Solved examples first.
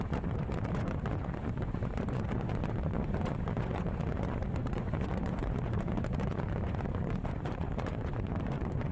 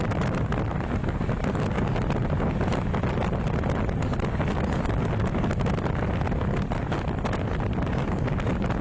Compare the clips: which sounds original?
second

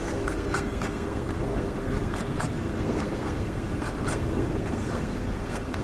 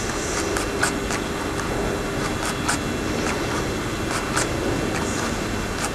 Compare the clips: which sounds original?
second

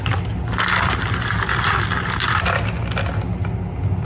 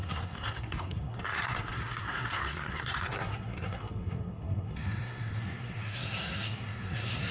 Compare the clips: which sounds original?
first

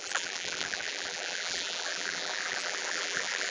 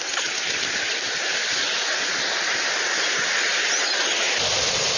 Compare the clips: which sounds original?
second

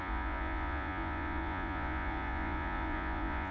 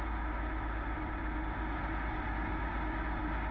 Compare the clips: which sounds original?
second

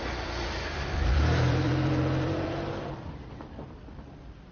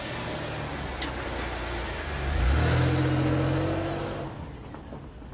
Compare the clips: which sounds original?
second